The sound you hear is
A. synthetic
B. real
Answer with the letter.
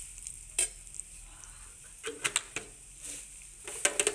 B